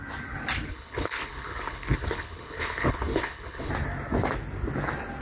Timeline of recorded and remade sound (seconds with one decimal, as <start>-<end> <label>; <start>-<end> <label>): 0.0-0.7 recorded; 0.7-3.7 remade; 3.7-5.2 recorded